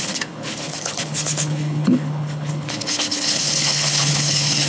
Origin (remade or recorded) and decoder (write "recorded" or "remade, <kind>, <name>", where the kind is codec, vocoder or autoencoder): remade, codec, HILCodec